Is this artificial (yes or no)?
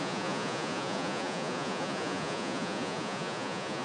yes